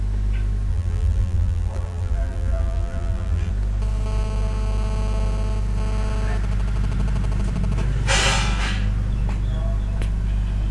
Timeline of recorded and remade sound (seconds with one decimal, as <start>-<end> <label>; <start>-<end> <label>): 0.0-0.7 recorded; 0.7-3.5 remade; 3.5-10.7 recorded